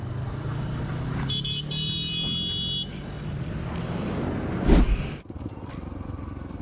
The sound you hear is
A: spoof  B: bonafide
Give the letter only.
B